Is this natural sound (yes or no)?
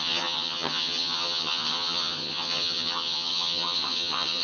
no